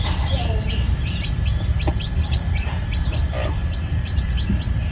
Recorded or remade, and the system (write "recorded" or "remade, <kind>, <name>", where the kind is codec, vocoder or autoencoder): recorded